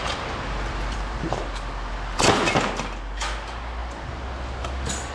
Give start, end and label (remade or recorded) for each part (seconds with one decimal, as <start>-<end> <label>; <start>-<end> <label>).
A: 0.0-1.4 remade; 1.4-5.1 recorded